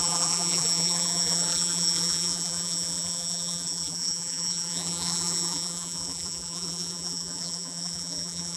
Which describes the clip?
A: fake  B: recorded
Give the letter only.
A